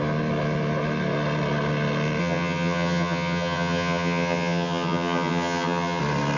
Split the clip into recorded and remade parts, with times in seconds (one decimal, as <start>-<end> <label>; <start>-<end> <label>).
0.0-2.2 recorded; 2.2-6.0 remade; 6.0-6.4 recorded

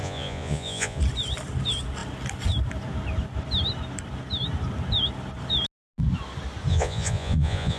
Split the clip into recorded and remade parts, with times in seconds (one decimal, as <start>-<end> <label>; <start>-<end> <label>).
0.0-1.0 remade; 1.0-6.7 recorded; 6.7-7.8 remade

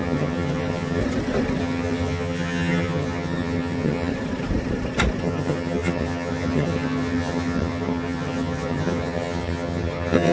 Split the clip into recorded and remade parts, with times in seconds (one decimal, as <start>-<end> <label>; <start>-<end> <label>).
0.0-1.0 remade; 1.0-1.6 recorded; 1.6-4.1 remade; 4.1-5.2 recorded; 5.2-10.3 remade

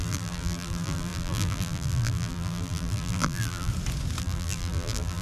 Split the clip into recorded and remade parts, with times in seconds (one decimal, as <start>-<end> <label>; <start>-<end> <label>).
0.0-3.7 remade; 3.7-4.2 recorded; 4.2-5.2 remade